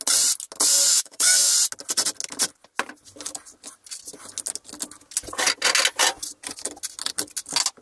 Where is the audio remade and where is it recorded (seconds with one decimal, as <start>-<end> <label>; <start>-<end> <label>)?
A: 0.0-0.9 recorded; 0.9-1.5 remade; 1.5-7.8 recorded